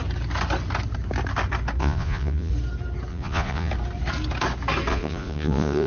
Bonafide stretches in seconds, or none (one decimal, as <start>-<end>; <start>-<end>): 0.0-1.8; 2.5-3.1; 3.7-4.9